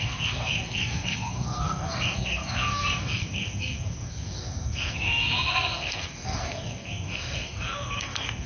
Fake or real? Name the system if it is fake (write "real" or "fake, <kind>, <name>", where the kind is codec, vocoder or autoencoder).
fake, codec, SNAC